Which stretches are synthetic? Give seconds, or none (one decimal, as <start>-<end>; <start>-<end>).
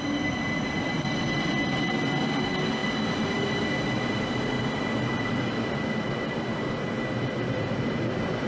none